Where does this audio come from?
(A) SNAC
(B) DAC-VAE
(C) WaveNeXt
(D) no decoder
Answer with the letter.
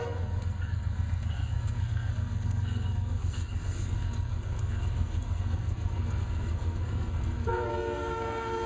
A